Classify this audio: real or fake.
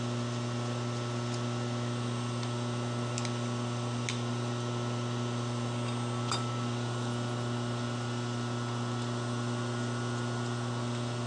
real